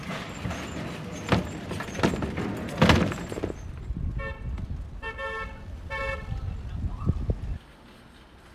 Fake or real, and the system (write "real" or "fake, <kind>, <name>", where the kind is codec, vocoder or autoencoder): real